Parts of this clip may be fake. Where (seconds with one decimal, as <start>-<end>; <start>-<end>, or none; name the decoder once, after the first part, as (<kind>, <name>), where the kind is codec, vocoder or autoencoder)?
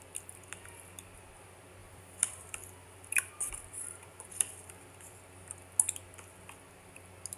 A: 1.8-4.7 (vocoder, BigVGAN v2)